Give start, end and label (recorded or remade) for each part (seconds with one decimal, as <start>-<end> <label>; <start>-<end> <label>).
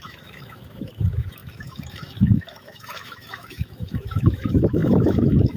0.0-5.6 remade